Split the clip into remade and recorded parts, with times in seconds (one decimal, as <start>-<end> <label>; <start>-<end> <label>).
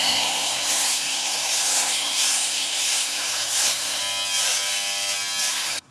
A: 0.0-4.0 remade; 4.0-5.5 recorded; 5.5-5.9 remade